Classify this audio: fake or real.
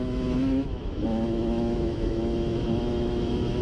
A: fake